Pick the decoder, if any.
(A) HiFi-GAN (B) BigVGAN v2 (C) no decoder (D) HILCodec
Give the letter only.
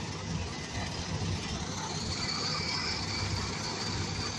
C